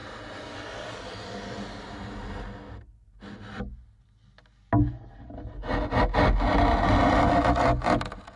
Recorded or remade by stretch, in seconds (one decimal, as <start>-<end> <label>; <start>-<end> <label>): 0.0-8.4 recorded

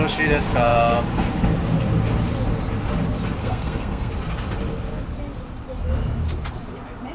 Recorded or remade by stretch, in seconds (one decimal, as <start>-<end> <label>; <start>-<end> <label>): 0.0-3.4 recorded; 3.4-4.1 remade; 4.1-7.1 recorded

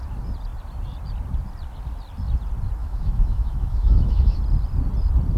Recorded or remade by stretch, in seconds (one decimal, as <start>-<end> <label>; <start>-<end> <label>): 0.0-2.8 recorded; 2.8-4.4 remade; 4.4-5.4 recorded

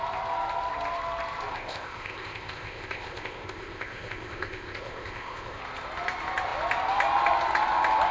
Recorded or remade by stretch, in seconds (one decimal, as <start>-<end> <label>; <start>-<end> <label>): 0.0-1.5 recorded; 1.5-5.6 remade; 5.6-8.1 recorded